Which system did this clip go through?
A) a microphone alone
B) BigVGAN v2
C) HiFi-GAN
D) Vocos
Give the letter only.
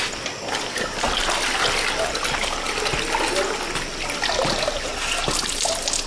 A